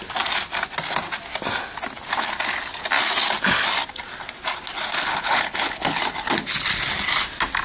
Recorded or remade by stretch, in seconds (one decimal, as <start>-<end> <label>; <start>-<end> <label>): 0.0-5.1 recorded; 5.1-6.0 remade; 6.0-7.6 recorded